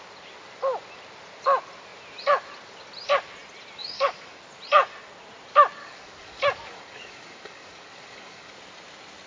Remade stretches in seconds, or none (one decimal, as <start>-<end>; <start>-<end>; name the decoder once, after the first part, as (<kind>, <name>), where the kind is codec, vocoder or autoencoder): 3.8-4.4 (codec, DAC); 5.8-8.5